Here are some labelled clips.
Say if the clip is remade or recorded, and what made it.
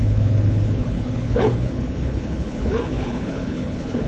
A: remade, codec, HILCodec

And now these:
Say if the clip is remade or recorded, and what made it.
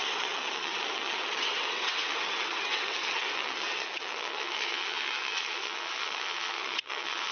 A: remade, vocoder, WaveNeXt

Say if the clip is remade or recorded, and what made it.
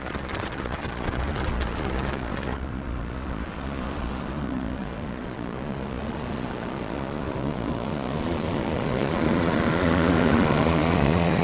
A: remade, vocoder, Vocos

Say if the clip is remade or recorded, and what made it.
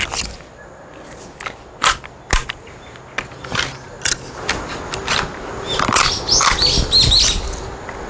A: recorded